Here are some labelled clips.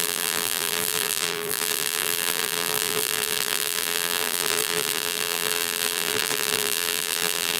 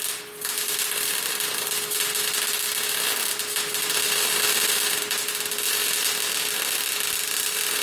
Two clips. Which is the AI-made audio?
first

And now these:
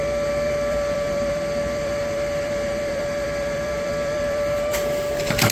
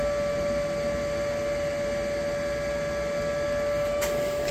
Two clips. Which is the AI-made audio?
first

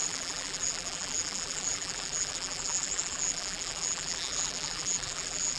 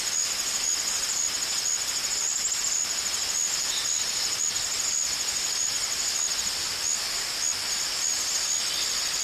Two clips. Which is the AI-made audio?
first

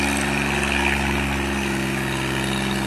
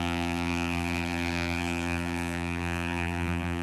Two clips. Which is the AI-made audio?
second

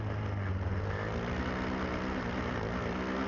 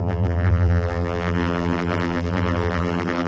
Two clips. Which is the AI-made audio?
second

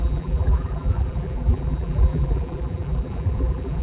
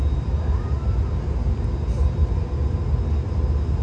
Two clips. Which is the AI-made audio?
first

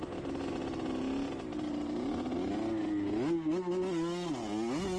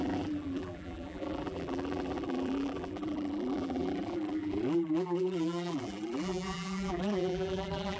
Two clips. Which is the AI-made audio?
second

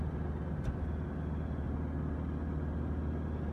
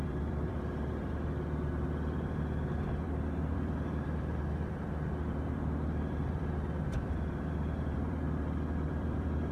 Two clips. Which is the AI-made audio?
second